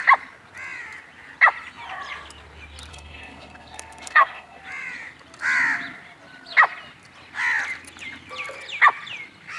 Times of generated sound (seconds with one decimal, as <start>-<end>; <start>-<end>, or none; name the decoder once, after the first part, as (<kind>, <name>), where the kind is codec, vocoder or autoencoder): 2.9-4.6 (codec, SNAC)